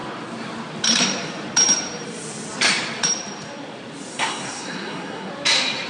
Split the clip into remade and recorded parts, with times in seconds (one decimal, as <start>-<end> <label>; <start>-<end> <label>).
0.0-4.1 recorded; 4.1-5.3 remade; 5.3-5.9 recorded